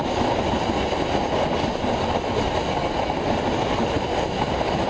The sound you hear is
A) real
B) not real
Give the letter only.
A